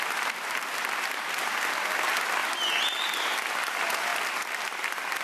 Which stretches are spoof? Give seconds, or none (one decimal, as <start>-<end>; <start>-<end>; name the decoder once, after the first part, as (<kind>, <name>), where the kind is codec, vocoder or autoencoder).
none